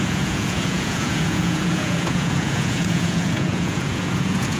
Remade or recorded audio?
remade